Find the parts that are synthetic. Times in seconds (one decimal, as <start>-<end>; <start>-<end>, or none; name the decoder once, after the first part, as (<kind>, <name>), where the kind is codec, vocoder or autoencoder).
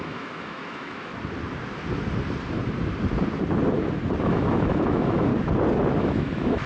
0.0-1.1 (autoencoder, DAC-VAE); 4.2-5.3; 6.0-6.7